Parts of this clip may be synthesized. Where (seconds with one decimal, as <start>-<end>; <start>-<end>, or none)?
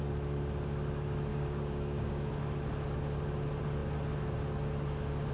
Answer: 1.3-2.3